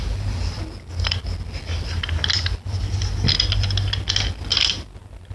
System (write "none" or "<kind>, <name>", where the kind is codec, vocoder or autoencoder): none